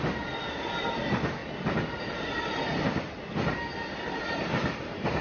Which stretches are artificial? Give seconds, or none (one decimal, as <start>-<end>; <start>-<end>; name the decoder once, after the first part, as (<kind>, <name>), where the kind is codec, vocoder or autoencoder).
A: none